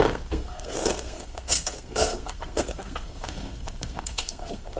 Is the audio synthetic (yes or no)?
yes